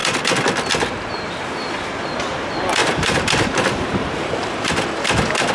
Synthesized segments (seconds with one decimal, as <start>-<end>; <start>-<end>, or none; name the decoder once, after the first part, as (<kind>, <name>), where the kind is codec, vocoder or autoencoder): 2.8-4.7 (vocoder, BigVGAN v2)